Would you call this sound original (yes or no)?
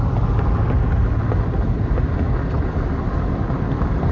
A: yes